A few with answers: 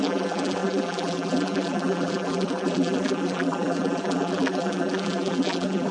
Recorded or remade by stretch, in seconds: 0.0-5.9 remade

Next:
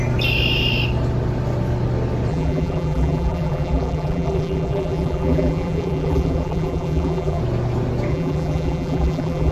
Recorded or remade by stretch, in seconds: 0.0-2.3 recorded; 2.3-7.4 remade; 7.4-8.1 recorded; 8.1-9.5 remade

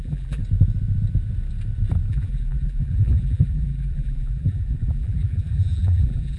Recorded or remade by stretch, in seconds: 0.0-0.4 remade; 0.4-2.1 recorded; 2.1-6.4 remade

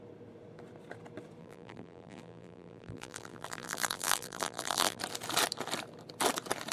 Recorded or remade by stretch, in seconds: 0.0-1.4 recorded; 1.4-5.0 remade; 5.0-6.7 recorded

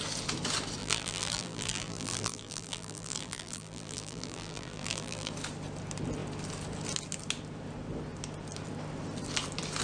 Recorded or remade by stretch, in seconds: 0.0-0.8 recorded; 0.8-5.3 remade; 5.3-9.8 recorded

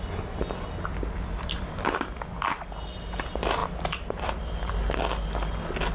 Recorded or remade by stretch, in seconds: 0.0-0.9 recorded; 0.9-2.7 remade; 2.7-3.6 recorded; 3.6-4.7 remade; 4.7-5.9 recorded